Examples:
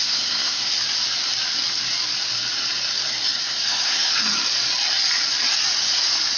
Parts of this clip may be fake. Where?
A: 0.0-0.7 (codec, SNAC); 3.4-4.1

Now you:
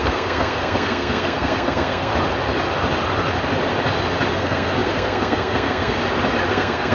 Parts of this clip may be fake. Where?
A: 0.0-2.1 (codec, SNAC); 4.3-6.0; 6.5-6.9

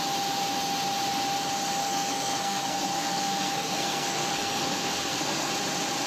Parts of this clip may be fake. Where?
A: 1.8-5.5 (codec, SNAC)

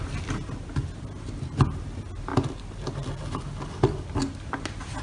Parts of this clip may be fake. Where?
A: none

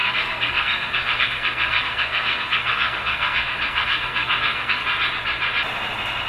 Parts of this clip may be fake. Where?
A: 0.0-4.8 (codec, SNAC)

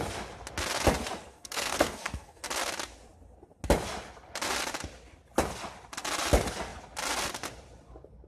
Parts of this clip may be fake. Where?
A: 1.3-2.4 (codec, SNAC)